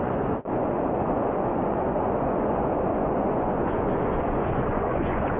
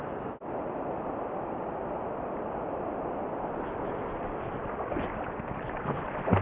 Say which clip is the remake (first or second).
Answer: first